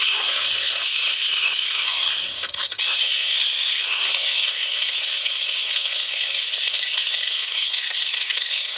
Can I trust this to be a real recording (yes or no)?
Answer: no